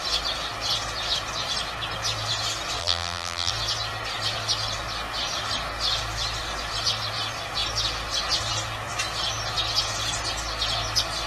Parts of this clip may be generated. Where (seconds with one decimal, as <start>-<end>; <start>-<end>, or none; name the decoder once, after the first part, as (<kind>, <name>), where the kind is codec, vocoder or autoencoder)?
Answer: 2.8-3.5 (vocoder, BigVGAN v2)